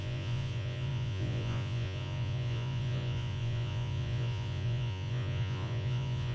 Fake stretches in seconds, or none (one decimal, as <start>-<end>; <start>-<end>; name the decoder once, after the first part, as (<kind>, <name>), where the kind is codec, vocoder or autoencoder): 0.0-6.3 (vocoder, Vocos)